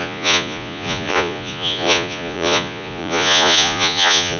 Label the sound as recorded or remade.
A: remade